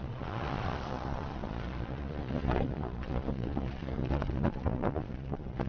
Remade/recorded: remade